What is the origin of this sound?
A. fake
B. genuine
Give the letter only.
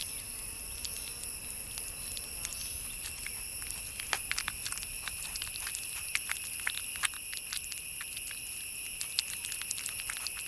B